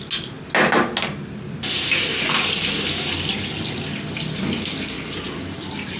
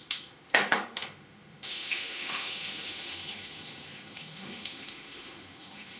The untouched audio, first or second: first